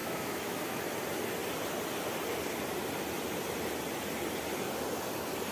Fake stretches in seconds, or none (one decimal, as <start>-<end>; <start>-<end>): 0.0-0.8

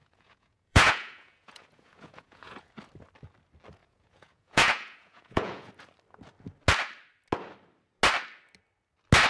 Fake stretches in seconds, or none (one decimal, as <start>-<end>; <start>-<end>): 0.0-2.7; 3.8-5.7